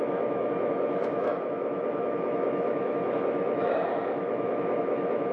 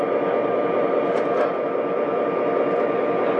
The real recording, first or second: second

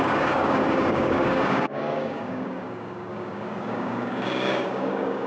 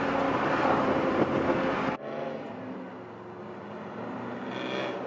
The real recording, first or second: second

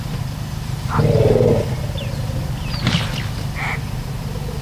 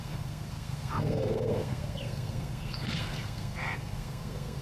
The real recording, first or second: first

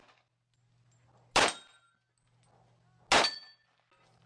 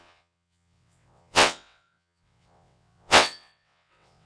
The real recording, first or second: first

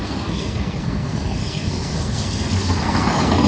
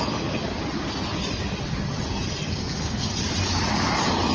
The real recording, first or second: second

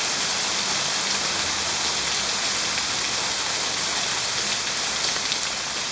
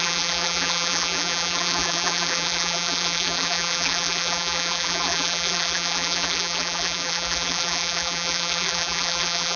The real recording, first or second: first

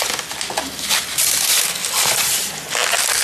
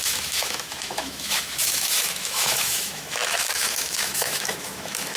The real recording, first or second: first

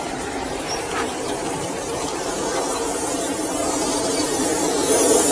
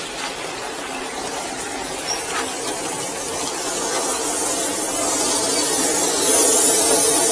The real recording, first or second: second